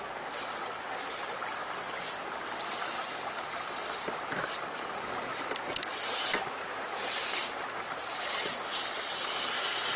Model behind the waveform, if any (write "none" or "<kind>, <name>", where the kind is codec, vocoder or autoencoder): none